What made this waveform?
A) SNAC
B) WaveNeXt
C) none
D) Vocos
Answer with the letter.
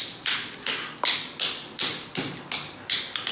C